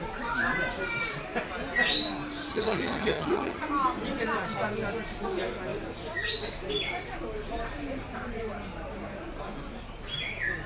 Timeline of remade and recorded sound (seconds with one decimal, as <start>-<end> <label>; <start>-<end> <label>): 0.0-2.5 recorded; 2.5-3.6 remade; 3.6-10.7 recorded